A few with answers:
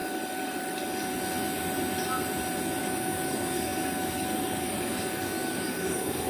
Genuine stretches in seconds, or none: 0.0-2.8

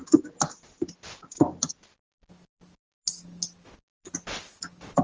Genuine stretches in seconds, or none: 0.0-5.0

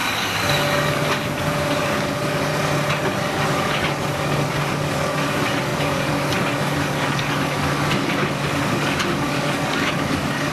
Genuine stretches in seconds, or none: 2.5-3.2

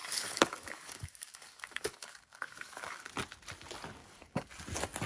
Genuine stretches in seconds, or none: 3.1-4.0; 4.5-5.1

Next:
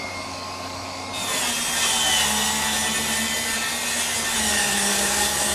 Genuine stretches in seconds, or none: 1.1-4.4

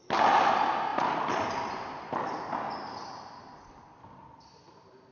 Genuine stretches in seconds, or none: 0.0-5.1

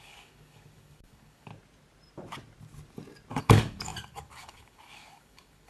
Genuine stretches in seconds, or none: 1.5-3.4

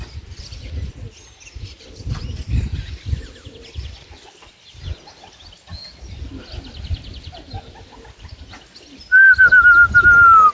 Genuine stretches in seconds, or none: 0.0-10.5